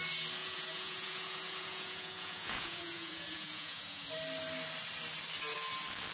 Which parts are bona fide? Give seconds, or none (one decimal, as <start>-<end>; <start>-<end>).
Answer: 0.0-0.4; 4.1-6.1